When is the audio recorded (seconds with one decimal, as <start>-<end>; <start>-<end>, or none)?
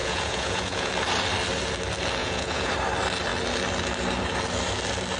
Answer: 0.9-2.2; 2.7-5.2